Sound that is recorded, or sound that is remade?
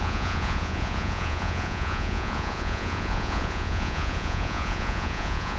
remade